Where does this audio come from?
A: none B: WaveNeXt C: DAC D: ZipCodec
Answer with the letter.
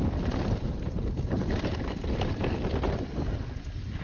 A